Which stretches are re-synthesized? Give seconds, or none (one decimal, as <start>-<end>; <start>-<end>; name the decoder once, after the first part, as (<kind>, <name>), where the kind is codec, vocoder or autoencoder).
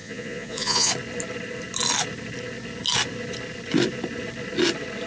0.0-0.9 (vocoder, Vocos)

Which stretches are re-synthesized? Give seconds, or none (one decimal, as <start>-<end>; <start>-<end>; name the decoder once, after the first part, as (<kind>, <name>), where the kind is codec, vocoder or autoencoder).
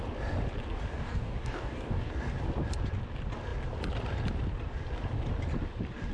0.9-2.1 (codec, DAC)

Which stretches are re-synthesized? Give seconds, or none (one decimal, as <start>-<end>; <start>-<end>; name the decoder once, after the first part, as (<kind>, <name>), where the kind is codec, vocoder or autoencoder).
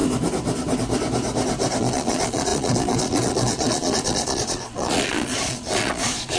1.8-6.4 (vocoder, Vocos)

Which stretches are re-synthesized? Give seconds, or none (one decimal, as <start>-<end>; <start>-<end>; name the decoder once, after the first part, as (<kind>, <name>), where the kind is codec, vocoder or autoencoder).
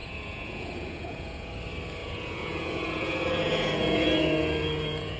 0.0-1.5 (vocoder, Vocos); 2.0-5.2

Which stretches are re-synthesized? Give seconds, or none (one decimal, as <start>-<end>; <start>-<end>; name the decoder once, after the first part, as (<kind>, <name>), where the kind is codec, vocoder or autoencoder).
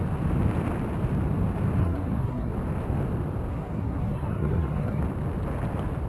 1.8-2.5 (codec, SNAC); 3.5-5.0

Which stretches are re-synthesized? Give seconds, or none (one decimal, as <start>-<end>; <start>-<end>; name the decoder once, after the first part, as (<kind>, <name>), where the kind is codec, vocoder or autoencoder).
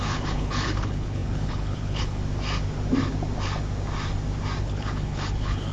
0.0-2.2 (codec, HILCodec); 4.6-5.7